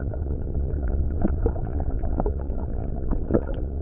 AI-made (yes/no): yes